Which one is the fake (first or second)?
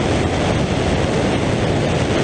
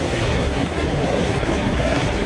second